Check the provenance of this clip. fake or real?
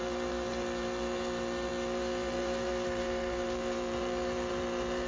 fake